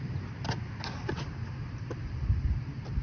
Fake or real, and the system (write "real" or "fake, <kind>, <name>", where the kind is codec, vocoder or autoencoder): real